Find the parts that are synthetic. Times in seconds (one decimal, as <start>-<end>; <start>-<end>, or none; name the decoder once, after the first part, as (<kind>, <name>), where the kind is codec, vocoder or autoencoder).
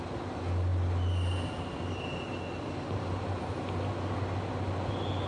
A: none